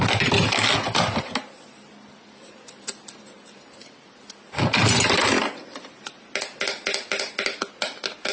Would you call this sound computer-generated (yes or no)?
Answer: no